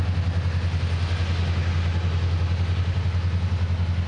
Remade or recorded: recorded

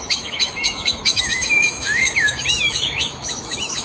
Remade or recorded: remade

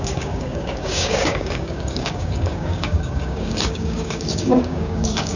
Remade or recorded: remade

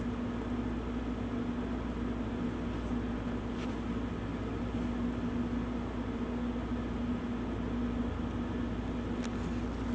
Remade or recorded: recorded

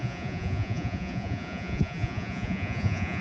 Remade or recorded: remade